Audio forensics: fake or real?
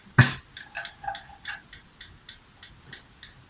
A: real